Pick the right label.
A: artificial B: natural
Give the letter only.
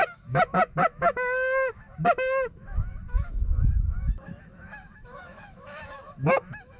A